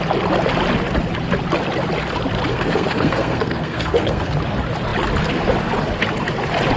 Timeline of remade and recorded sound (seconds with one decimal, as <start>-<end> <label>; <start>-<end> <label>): 0.0-2.5 recorded; 2.5-4.4 remade; 4.4-6.8 recorded